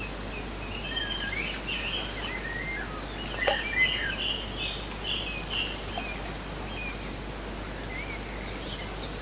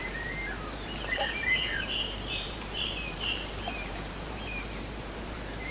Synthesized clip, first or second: second